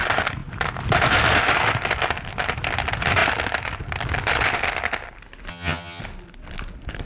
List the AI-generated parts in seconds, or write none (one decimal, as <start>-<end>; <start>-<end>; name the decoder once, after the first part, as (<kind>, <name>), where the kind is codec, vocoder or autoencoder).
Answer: 5.5-6.0 (vocoder, HiFi-GAN)